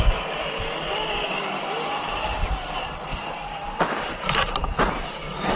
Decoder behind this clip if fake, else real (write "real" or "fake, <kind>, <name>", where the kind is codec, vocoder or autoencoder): real